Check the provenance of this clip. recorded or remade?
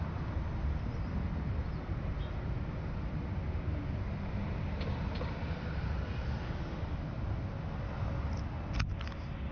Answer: recorded